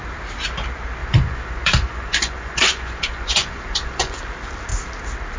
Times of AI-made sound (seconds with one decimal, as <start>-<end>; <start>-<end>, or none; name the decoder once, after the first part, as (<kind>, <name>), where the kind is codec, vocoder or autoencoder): 1.0-4.2 (vocoder, Vocos)